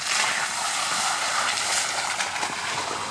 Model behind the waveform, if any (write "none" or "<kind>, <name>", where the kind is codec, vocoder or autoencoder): none